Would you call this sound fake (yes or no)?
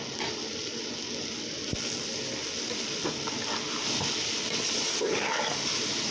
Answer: no